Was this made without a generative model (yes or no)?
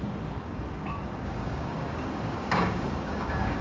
no